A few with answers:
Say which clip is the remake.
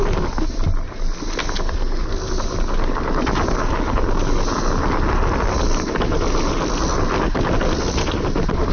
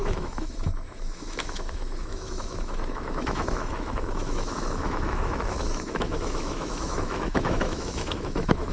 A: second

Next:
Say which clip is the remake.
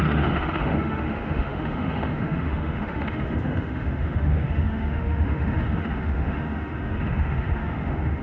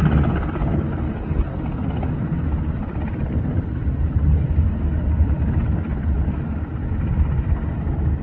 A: first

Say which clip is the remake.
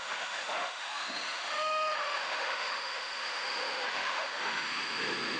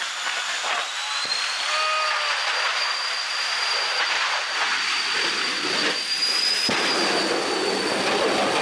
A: first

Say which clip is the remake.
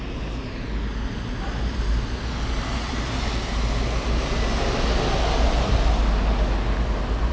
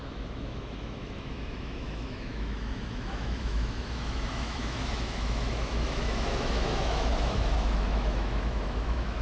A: second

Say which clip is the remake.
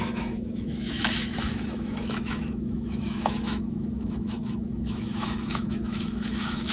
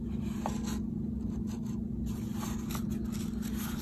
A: first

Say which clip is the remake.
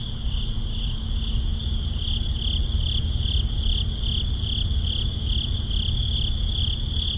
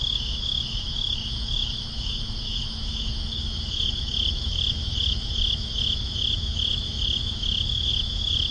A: second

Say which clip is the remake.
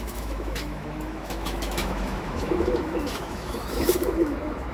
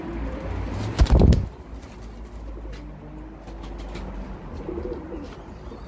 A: first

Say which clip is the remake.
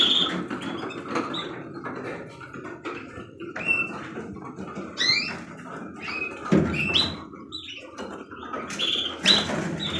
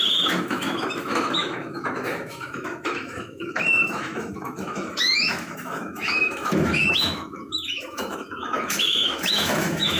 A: second